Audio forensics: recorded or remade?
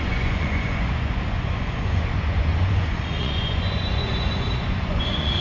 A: remade